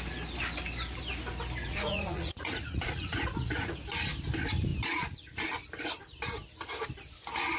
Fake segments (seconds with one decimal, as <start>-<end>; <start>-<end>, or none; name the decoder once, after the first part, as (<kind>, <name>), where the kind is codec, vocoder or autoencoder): 1.6-3.8 (vocoder, Vocos)